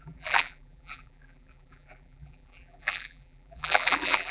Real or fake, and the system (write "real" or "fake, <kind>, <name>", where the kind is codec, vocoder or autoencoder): fake, vocoder, BigVGAN v2